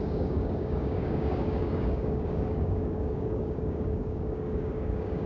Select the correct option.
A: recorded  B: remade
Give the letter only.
B